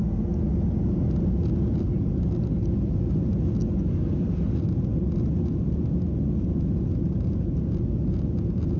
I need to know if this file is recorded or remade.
recorded